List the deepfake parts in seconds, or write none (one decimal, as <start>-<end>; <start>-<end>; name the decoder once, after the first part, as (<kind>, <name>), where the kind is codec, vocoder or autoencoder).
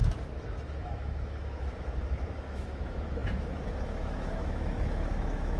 0.0-5.6 (autoencoder, DAC-VAE)